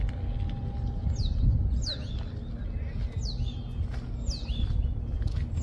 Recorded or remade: recorded